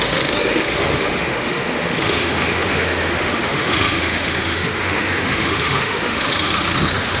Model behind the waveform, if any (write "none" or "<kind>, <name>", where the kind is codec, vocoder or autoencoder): autoencoder, DAC-VAE